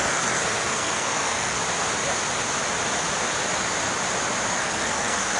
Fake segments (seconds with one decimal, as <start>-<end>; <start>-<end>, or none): 0.0-1.6; 4.5-5.4